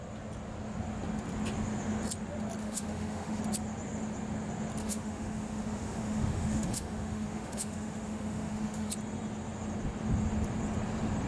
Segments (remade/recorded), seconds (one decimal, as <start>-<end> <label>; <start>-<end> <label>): 0.0-2.6 recorded; 2.6-3.4 remade; 3.4-4.8 recorded; 4.8-8.9 remade; 8.9-11.3 recorded